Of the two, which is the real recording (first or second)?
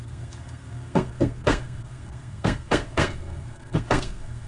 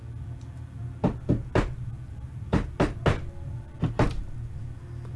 second